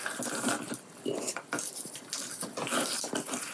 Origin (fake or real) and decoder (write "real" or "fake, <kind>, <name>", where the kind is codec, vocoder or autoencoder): real